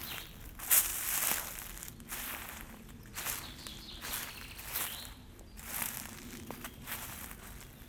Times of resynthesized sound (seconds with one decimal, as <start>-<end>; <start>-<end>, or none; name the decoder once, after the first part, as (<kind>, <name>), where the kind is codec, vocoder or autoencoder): none